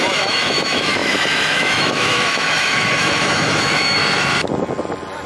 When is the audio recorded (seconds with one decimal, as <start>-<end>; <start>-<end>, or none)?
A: 4.0-5.3